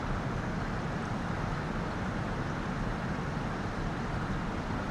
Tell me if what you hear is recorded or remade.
remade